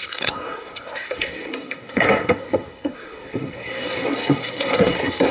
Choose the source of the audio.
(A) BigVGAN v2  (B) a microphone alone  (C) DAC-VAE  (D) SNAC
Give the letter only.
D